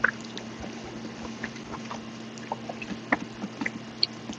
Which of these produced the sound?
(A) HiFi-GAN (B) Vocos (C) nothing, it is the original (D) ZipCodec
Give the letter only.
C